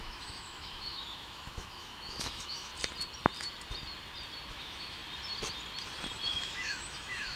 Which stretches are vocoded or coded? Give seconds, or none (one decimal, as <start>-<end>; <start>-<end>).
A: 0.0-2.7; 4.5-5.0; 6.3-7.4